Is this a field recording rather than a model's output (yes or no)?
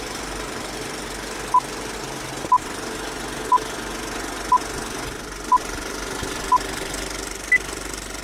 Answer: yes